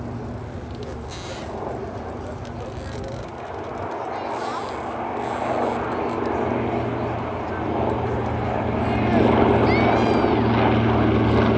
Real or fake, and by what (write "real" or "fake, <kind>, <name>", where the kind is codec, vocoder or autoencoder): real